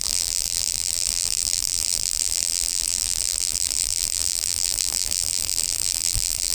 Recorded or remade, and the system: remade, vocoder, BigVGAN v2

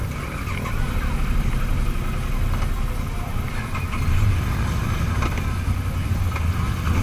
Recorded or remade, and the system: recorded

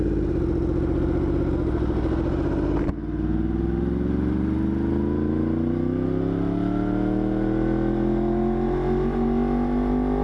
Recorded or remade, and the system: recorded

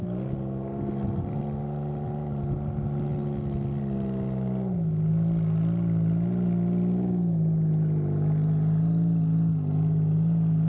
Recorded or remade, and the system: recorded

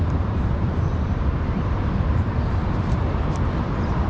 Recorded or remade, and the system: remade, vocoder, BigVGAN v2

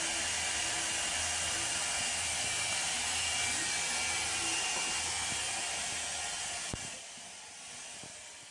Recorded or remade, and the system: recorded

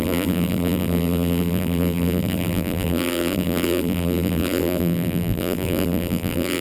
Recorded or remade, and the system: remade, vocoder, BigVGAN v2